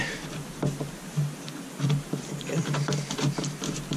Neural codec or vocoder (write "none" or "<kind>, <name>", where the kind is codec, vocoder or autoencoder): vocoder, BigVGAN v2